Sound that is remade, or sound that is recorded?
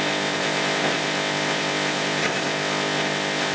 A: remade